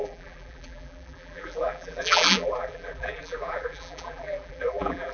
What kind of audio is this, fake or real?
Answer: fake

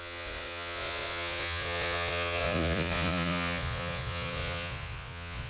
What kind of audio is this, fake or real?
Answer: fake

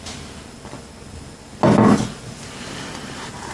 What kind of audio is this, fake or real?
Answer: real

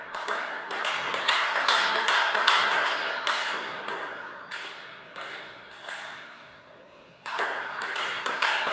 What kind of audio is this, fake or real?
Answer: fake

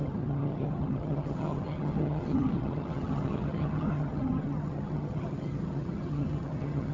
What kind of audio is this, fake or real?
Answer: fake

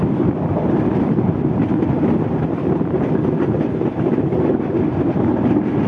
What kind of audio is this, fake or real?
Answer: fake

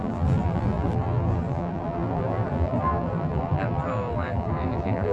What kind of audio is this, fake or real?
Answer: fake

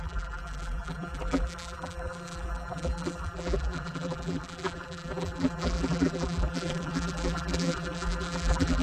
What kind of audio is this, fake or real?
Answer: fake